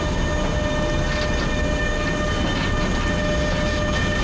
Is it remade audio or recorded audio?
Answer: recorded